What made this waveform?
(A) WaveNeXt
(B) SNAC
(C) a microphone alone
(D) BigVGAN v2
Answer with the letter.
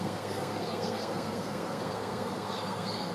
B